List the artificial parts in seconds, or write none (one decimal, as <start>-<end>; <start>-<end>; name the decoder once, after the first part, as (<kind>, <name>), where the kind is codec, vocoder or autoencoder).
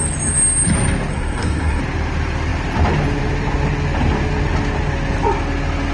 1.1-1.8 (codec, SNAC)